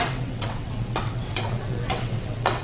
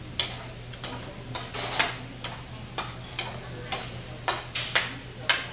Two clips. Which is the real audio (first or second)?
second